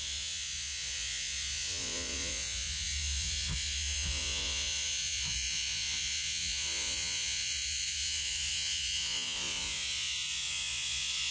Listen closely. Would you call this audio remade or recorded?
remade